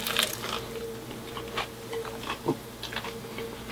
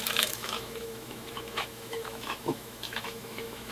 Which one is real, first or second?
first